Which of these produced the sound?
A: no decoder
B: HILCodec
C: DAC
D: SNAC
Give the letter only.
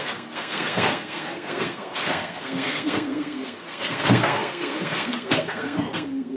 D